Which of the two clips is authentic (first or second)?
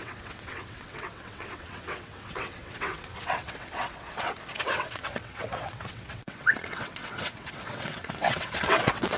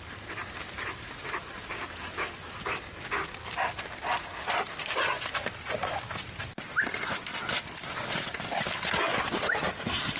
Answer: second